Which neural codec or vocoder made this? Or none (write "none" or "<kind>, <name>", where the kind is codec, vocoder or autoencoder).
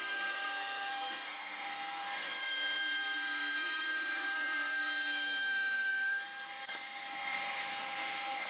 codec, SNAC